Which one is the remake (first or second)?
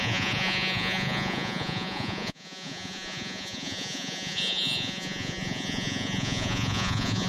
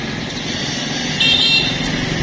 first